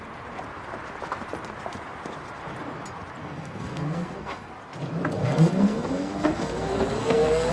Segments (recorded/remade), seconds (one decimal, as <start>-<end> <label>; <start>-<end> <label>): 0.0-3.2 recorded; 3.2-4.5 remade; 4.5-5.2 recorded; 5.2-7.5 remade